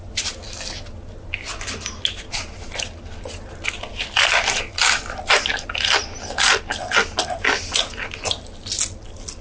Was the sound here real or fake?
real